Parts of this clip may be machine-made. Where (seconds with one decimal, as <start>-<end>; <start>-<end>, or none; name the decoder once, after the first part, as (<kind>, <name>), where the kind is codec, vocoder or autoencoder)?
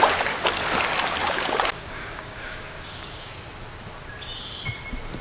1.2-3.4 (codec, DAC)